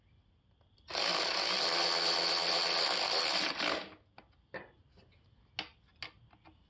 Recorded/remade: recorded